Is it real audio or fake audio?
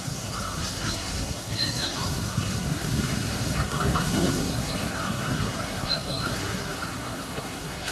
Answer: fake